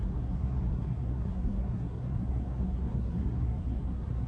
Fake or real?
fake